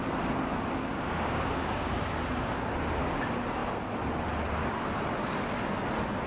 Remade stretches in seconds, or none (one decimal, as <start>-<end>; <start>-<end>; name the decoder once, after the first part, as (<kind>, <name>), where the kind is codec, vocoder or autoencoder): 0.8-2.0 (codec, DAC)

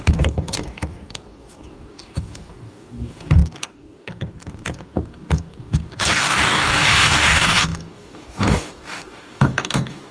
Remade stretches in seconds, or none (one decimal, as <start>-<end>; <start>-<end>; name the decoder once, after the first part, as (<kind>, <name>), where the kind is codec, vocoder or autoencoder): 0.0-10.1 (codec, DAC)

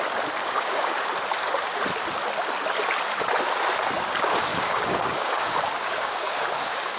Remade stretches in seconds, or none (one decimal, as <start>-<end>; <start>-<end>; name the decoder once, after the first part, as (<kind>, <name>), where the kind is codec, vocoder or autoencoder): 0.4-1.1 (codec, DAC); 4.5-7.0

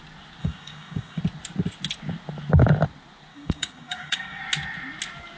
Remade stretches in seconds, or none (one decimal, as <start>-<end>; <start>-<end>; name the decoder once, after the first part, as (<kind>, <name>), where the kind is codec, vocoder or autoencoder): 0.4-1.2 (codec, DAC); 3.3-4.4

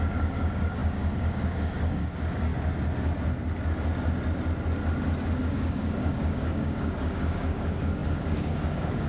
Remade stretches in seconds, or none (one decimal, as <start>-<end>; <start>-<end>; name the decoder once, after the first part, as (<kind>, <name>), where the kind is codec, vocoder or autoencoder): 0.0-2.5 (codec, DAC); 5.4-9.1

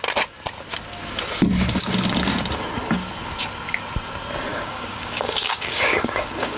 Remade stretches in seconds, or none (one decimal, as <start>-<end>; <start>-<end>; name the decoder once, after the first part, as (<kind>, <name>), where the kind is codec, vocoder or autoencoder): 4.5-6.6 (codec, DAC)

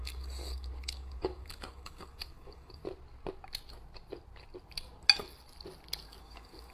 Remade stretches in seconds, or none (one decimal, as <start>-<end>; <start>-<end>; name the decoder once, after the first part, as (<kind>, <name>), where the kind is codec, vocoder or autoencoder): 0.0-2.8 (codec, DAC); 6.2-6.7